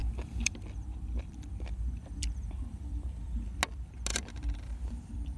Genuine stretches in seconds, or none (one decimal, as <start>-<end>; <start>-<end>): 3.2-4.1